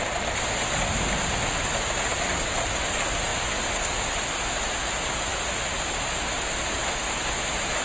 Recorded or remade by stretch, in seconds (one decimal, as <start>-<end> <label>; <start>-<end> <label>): 0.0-7.8 recorded

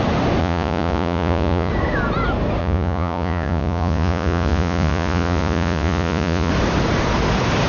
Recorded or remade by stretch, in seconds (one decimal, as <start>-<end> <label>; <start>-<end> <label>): 0.0-0.4 recorded; 0.4-1.7 remade; 1.7-2.6 recorded; 2.6-6.5 remade; 6.5-7.7 recorded

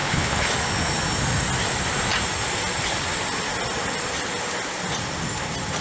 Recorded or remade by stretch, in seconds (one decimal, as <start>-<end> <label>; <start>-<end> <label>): 0.0-0.5 remade; 0.5-5.8 recorded

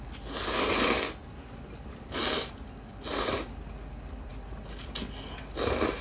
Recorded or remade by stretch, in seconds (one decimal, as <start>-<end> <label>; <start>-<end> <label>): 0.0-6.0 recorded

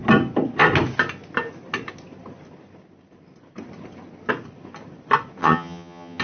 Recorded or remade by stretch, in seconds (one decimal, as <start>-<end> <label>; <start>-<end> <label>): 0.0-5.4 recorded; 5.4-6.2 remade

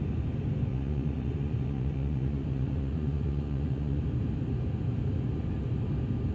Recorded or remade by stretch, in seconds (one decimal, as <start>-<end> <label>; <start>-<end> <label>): 0.0-0.7 recorded; 0.7-4.0 remade; 4.0-6.3 recorded

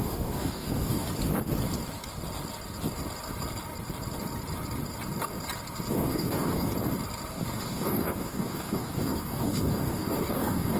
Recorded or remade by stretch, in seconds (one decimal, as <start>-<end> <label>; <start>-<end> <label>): 0.0-1.1 remade; 1.1-5.9 recorded; 5.9-6.7 remade; 6.7-7.3 recorded; 7.3-10.8 remade